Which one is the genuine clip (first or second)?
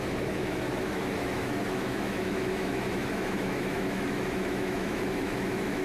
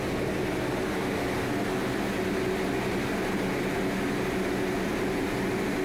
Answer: second